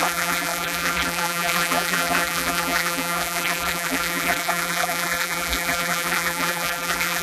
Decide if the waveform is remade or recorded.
remade